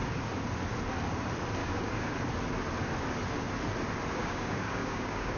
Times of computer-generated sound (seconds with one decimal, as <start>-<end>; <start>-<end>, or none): 1.6-2.1; 4.2-5.4